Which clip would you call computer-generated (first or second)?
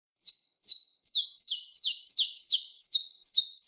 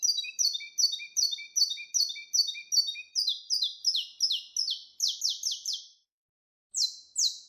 first